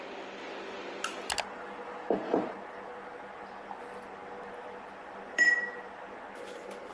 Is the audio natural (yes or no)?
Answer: yes